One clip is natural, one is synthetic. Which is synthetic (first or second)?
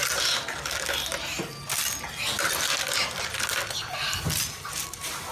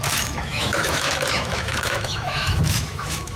second